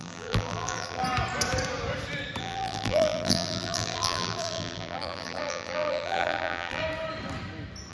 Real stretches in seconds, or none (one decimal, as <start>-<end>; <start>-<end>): 1.0-2.4; 6.8-7.9